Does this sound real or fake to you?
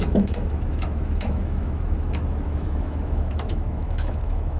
fake